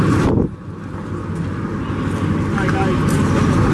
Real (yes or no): yes